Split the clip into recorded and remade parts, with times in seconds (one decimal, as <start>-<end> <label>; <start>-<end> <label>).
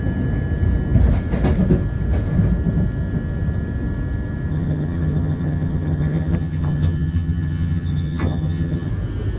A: 0.0-4.5 recorded; 4.5-8.9 remade; 8.9-9.4 recorded